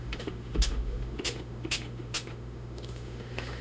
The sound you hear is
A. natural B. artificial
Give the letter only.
B